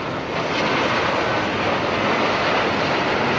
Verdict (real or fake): real